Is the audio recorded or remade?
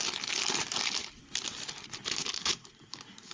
recorded